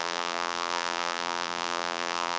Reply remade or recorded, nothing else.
remade